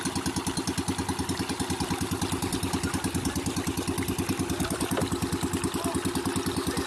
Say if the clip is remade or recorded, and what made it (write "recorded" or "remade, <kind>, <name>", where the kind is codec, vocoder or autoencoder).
recorded